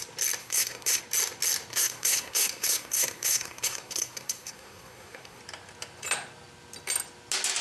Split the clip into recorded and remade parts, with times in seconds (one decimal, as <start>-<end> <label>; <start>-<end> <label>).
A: 0.0-0.4 recorded; 0.4-1.0 remade; 1.0-1.7 recorded; 1.7-5.4 remade; 5.4-7.6 recorded